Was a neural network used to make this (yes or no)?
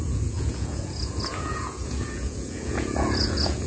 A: yes